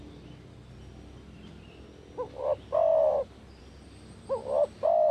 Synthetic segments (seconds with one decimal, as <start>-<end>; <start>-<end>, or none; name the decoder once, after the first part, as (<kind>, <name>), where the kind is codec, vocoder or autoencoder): none